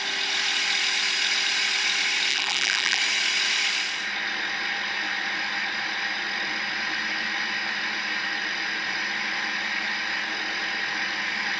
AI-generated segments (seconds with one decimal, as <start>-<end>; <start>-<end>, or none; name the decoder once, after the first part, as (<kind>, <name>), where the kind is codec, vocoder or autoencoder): 2.3-3.0 (vocoder, BigVGAN v2)